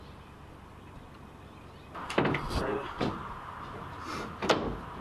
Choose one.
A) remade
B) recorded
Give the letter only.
B